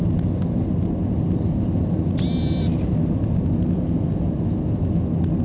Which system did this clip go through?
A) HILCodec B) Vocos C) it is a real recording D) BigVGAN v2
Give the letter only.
C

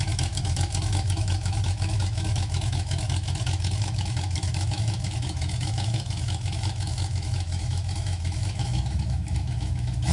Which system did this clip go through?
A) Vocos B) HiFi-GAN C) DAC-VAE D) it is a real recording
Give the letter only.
C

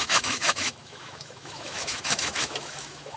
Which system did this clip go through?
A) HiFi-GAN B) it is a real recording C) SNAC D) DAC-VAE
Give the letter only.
D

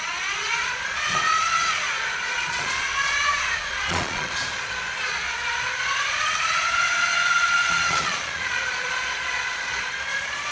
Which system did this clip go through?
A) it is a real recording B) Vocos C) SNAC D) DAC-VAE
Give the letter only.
B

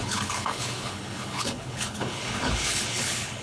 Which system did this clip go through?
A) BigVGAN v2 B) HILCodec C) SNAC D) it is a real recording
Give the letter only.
B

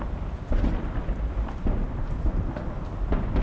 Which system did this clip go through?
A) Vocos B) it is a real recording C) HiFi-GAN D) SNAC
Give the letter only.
B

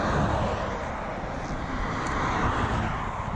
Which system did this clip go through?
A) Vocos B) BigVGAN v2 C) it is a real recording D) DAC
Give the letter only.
C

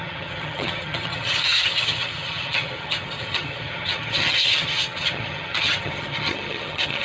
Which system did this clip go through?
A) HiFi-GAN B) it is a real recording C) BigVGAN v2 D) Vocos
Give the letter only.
A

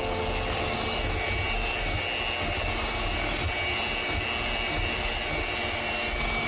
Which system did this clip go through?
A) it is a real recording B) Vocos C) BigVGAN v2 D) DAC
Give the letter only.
A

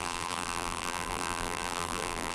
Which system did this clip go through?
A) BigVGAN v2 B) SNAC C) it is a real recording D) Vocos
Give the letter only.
A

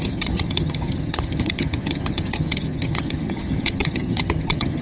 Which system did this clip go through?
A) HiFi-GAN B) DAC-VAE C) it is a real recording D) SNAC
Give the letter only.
A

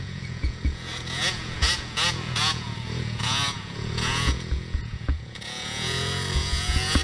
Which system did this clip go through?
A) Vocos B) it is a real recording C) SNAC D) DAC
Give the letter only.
A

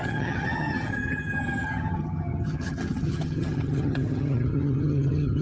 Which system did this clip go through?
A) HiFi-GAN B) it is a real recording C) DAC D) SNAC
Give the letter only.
A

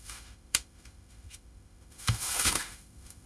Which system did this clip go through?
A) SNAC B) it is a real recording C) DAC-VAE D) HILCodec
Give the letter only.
C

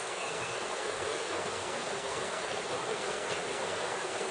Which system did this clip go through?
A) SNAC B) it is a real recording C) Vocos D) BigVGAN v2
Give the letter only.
A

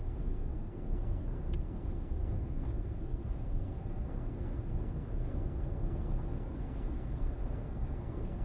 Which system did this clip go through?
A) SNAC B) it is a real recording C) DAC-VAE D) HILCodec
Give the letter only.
A